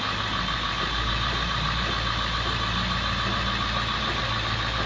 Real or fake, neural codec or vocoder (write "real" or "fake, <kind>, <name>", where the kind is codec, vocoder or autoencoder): real